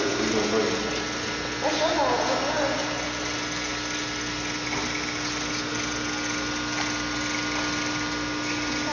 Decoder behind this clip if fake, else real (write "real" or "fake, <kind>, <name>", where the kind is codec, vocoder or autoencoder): real